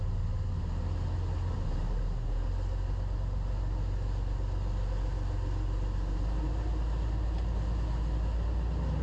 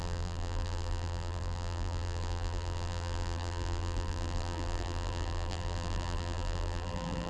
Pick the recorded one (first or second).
first